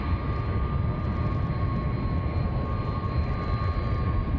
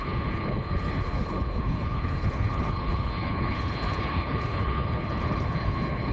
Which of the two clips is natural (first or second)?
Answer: first